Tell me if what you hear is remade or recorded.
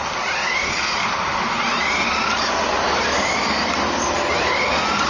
recorded